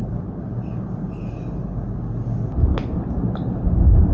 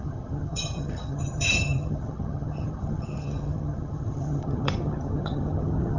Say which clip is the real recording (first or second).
first